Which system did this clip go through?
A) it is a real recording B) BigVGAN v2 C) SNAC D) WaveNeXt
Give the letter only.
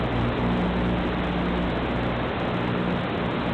A